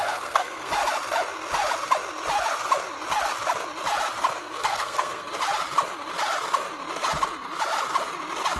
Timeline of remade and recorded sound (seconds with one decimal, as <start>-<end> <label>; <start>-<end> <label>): 0.0-0.7 remade; 0.7-4.4 recorded; 4.4-5.3 remade; 5.3-8.6 recorded